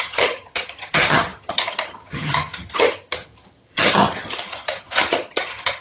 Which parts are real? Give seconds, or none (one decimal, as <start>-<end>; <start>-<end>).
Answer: none